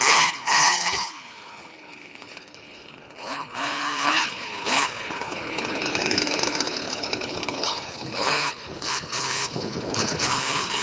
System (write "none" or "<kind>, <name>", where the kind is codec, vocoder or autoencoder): codec, HILCodec